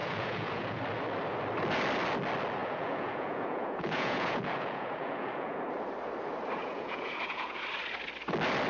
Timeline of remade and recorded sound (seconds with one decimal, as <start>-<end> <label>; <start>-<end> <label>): 0.0-0.8 remade; 0.8-2.6 recorded; 2.6-5.6 remade; 5.6-6.6 recorded; 6.6-7.6 remade; 7.6-8.7 recorded